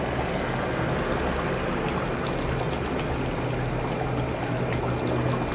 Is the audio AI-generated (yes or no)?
no